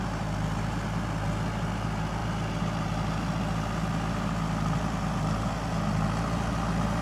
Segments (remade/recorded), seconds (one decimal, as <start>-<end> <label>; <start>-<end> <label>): 0.0-2.2 recorded; 2.2-5.5 remade; 5.5-7.0 recorded